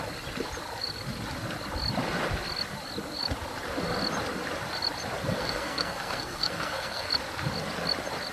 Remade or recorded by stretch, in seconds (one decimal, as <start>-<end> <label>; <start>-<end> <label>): 0.0-5.3 recorded; 5.3-7.1 remade; 7.1-8.3 recorded